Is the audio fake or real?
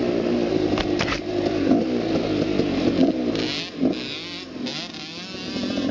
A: real